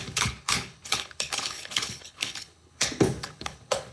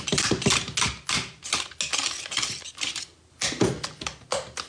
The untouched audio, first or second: second